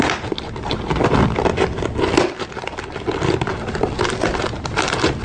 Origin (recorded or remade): recorded